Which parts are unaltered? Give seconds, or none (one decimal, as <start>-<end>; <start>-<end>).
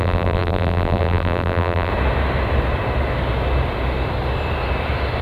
1.9-5.2